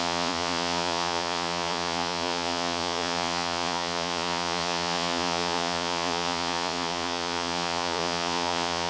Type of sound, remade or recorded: remade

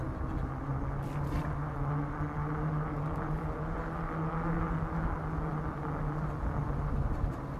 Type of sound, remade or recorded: recorded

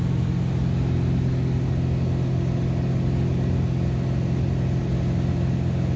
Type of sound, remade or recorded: recorded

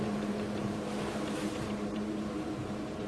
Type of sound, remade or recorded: remade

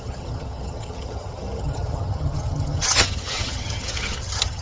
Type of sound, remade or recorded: remade